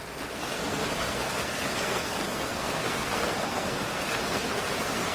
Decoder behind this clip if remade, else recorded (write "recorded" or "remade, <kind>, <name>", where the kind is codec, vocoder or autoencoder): remade, codec, SNAC